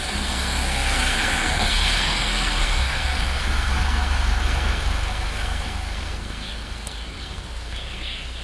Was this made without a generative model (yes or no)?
no